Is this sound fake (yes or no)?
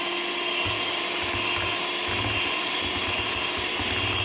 no